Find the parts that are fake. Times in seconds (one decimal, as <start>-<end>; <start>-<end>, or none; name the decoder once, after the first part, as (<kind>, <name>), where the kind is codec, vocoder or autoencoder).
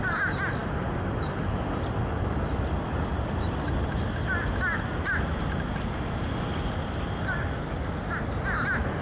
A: none